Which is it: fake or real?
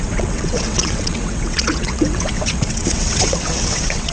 fake